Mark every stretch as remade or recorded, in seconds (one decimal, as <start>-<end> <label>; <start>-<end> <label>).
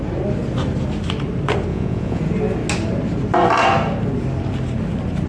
0.0-1.7 recorded; 1.7-2.2 remade; 2.2-5.3 recorded